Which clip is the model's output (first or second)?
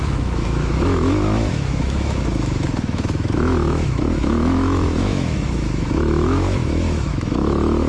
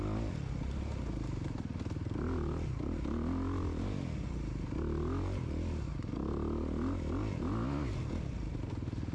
first